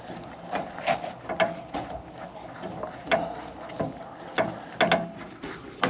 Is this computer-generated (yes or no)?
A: no